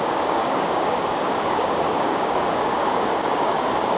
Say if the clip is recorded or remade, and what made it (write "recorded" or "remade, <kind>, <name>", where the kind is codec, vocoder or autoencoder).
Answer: remade, codec, DAC